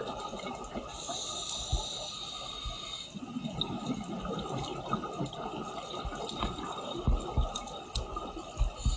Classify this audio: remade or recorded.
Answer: recorded